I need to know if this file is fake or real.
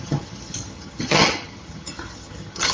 fake